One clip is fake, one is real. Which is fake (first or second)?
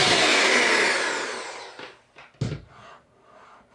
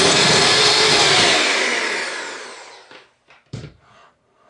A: second